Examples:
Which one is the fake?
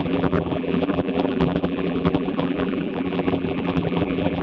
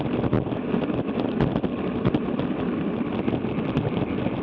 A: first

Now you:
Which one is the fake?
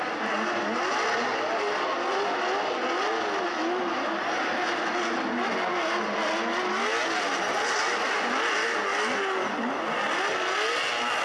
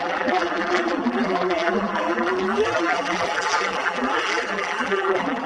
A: second